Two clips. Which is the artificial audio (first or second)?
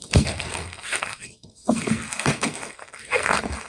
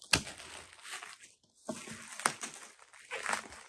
first